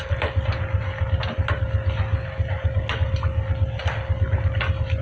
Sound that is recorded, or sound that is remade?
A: recorded